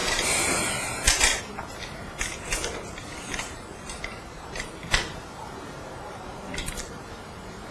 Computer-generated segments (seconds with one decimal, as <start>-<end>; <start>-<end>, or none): 0.0-1.4; 3.0-7.7